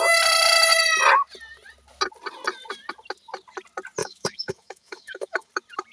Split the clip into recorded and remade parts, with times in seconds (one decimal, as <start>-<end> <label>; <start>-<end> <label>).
0.0-4.0 recorded; 4.0-5.5 remade; 5.5-5.9 recorded